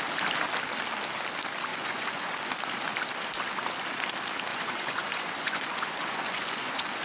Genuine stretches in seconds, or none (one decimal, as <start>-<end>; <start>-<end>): 0.0-1.7; 2.5-4.5